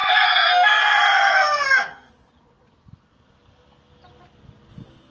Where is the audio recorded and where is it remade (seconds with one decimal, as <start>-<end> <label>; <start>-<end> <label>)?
0.0-2.1 remade; 2.1-5.1 recorded